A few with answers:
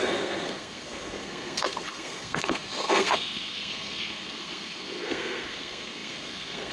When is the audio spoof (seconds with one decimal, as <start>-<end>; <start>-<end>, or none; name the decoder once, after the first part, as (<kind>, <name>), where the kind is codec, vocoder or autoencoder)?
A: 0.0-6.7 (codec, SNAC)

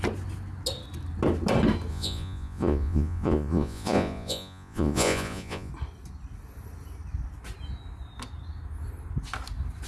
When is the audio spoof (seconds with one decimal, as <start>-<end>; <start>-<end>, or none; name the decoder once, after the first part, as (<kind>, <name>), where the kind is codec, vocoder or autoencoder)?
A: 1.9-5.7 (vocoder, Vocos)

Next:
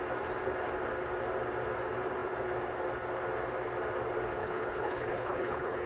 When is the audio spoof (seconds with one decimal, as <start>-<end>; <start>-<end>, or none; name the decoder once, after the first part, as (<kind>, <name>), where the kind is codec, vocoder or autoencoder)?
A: 4.4-5.9 (codec, HILCodec)